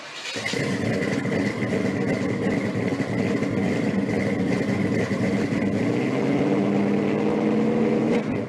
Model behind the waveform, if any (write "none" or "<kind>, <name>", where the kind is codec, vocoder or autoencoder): none